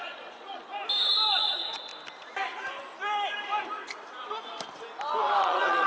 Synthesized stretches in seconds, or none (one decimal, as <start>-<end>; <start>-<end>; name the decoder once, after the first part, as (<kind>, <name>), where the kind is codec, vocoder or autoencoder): 0.0-0.6 (vocoder, Vocos); 1.3-1.9; 5.4-5.9